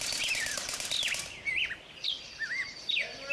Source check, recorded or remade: recorded